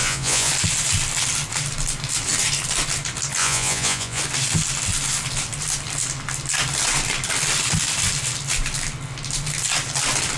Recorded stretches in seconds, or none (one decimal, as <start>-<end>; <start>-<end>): 0.5-3.4; 4.2-10.4